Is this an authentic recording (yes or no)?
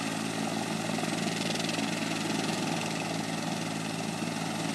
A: yes